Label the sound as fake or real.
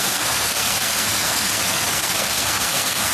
fake